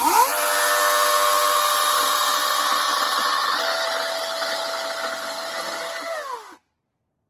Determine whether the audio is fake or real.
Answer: real